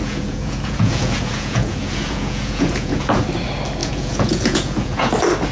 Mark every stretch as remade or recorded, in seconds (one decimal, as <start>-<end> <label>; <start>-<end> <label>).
0.0-3.2 remade; 3.2-3.8 recorded; 3.8-5.1 remade; 5.1-5.5 recorded